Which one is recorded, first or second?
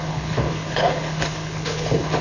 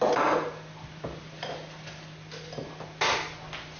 second